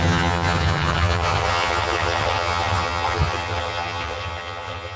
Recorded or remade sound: remade